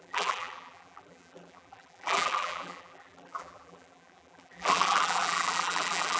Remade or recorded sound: remade